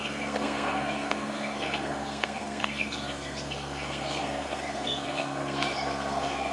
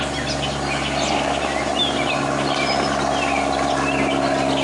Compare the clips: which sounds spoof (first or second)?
first